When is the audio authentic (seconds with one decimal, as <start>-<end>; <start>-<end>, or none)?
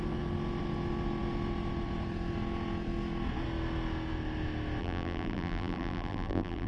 0.0-4.8